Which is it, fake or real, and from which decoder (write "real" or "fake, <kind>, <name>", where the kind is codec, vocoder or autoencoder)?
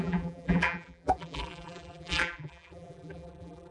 fake, vocoder, BigVGAN v2